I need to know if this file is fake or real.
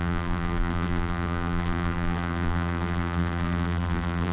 fake